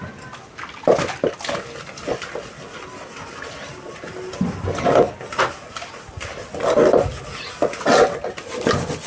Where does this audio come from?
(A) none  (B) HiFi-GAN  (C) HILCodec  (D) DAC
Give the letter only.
A